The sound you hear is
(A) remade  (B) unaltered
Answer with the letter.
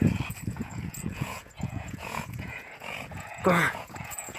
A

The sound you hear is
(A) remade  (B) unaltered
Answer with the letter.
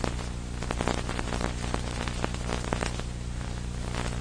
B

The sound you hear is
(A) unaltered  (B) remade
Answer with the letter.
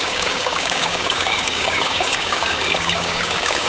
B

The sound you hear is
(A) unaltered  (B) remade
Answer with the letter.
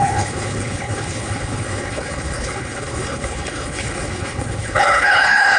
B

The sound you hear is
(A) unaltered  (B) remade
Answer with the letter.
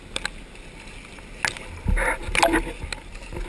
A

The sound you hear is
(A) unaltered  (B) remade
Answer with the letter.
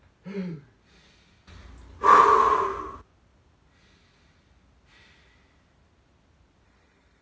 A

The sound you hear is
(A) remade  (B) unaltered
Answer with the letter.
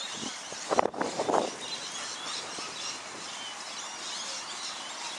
B